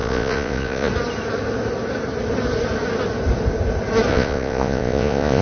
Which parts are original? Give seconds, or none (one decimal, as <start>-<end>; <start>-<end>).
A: 0.9-4.1